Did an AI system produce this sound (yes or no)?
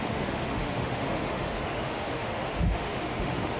yes